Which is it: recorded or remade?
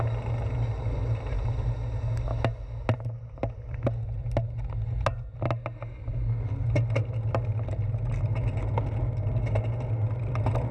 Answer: recorded